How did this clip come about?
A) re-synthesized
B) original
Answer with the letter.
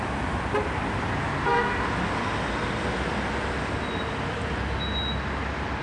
B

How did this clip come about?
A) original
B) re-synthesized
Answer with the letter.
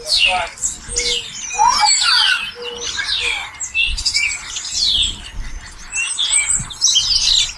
A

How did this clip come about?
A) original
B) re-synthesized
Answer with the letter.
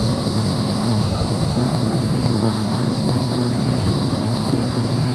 B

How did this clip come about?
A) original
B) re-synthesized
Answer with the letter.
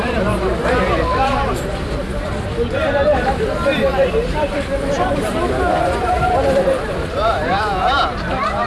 B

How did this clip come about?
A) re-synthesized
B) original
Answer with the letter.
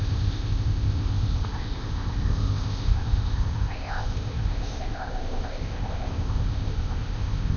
A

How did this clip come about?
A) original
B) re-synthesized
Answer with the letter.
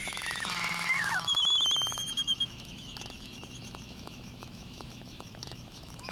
B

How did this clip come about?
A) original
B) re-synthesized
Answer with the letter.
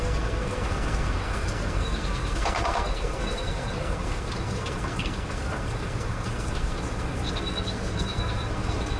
B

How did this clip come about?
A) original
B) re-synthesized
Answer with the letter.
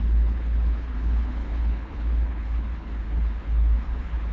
B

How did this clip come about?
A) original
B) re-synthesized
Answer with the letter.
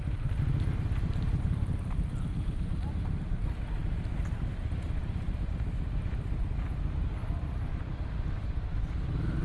B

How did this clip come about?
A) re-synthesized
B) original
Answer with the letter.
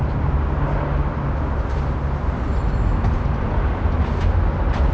B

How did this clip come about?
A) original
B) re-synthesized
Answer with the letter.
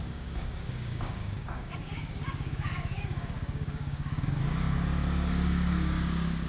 B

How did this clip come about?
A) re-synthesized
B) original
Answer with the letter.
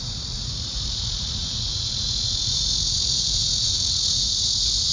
A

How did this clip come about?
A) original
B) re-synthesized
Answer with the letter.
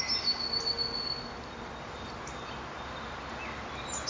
A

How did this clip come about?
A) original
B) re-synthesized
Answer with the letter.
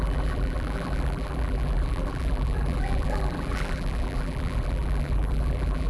B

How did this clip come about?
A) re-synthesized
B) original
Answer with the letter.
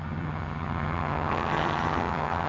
A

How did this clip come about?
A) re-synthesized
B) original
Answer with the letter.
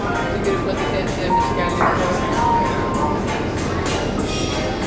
B